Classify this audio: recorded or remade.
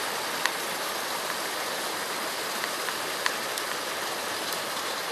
recorded